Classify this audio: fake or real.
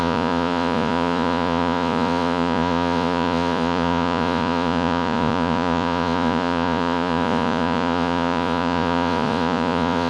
fake